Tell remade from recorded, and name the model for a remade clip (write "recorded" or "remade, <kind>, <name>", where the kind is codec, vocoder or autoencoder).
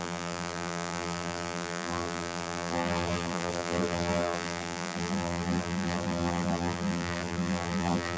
remade, vocoder, BigVGAN v2